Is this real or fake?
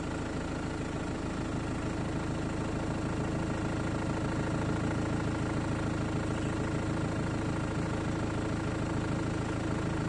real